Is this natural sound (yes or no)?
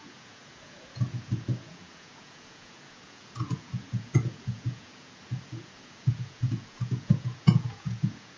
no